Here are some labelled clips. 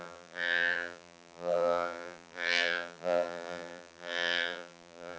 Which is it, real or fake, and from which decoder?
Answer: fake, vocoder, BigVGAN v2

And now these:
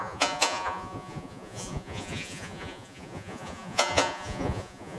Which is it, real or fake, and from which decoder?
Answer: fake, vocoder, Vocos